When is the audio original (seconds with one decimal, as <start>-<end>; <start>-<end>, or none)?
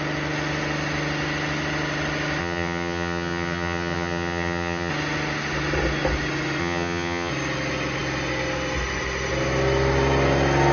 0.0-2.4; 4.9-6.6; 7.3-10.7